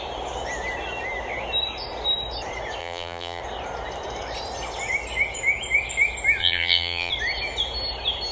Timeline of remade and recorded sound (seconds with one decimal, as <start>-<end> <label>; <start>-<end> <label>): 0.0-2.8 recorded; 2.8-3.4 remade; 3.4-6.4 recorded; 6.4-7.1 remade; 7.1-8.3 recorded